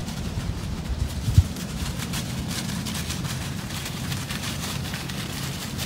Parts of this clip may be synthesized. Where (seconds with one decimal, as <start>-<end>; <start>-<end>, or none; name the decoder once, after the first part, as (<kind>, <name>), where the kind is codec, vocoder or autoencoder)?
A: 0.0-2.3 (vocoder, BigVGAN v2); 3.0-4.9